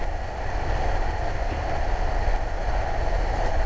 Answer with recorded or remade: recorded